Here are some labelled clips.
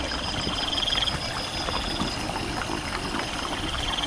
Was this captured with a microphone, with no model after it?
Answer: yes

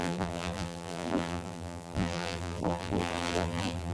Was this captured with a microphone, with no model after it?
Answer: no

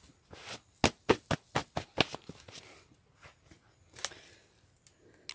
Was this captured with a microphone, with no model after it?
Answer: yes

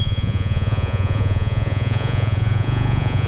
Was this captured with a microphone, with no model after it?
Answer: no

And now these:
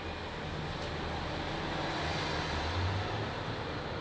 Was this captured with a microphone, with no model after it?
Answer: yes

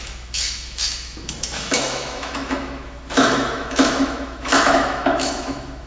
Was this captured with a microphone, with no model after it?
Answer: no